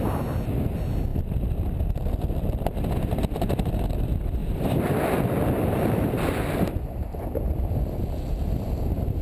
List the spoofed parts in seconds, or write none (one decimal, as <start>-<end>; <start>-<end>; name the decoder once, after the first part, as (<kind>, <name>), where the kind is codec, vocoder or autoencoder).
4.4-8.0 (vocoder, BigVGAN v2)